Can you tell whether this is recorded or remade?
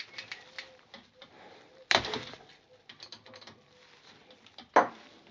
recorded